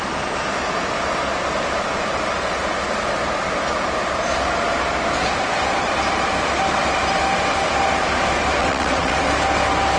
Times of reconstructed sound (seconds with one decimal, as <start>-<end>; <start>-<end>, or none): 8.6-9.2